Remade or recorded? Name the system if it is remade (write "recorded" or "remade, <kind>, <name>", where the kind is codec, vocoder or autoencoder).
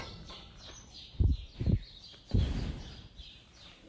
remade, vocoder, BigVGAN v2